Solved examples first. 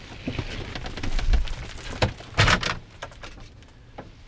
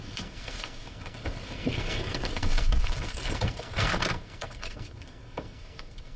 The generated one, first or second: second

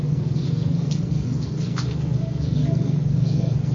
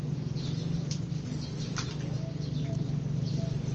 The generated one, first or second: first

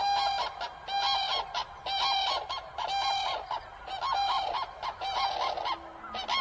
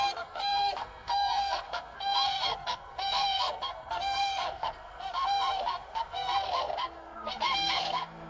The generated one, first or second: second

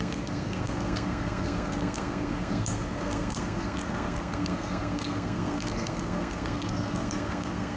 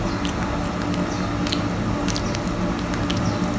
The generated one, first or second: first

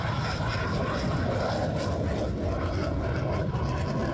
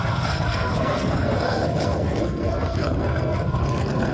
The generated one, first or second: second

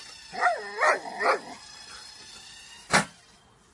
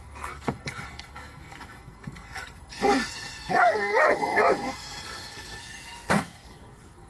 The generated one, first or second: second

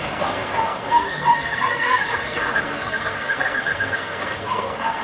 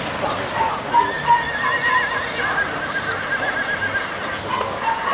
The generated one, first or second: first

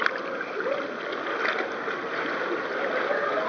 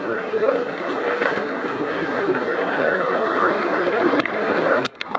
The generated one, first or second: second